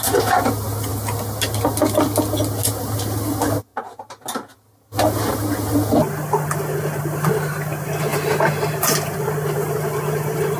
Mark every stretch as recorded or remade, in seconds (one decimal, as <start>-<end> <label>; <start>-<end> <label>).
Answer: 0.0-10.6 recorded